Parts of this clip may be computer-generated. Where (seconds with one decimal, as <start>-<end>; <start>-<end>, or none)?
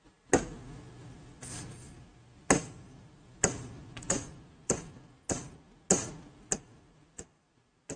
3.8-4.4